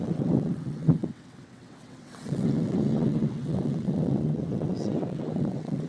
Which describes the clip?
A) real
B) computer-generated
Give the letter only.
B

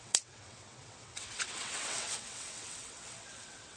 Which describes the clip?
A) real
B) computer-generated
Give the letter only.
B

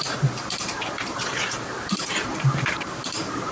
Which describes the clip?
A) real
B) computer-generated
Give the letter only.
B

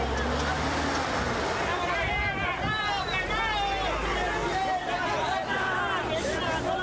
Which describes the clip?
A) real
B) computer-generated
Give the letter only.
A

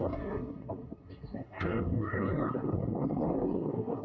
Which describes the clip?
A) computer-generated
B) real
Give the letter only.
A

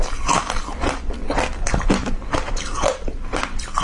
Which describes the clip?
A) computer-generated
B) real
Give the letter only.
B